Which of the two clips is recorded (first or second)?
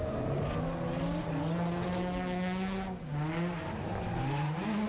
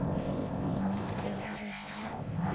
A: first